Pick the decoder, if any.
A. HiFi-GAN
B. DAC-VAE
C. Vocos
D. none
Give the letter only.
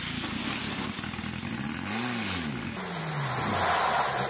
D